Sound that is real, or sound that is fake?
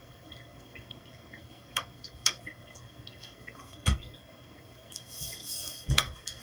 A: fake